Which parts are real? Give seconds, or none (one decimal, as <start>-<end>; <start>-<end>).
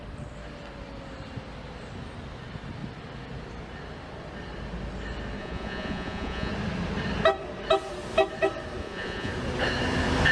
0.0-5.4; 6.5-8.8; 9.3-10.3